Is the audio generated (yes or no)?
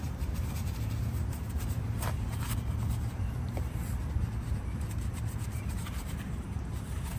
yes